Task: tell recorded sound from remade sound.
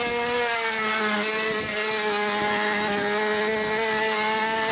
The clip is recorded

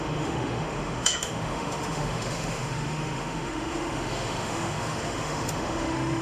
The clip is remade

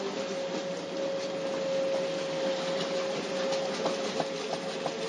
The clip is recorded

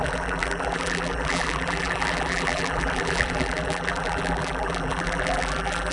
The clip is remade